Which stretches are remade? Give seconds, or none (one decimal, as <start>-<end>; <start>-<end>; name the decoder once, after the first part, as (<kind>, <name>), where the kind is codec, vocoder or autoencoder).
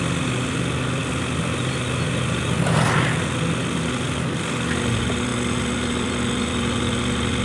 none